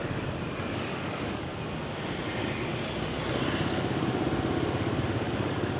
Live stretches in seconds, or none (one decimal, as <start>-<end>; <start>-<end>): 1.5-5.0